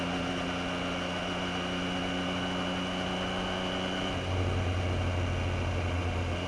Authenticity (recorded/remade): recorded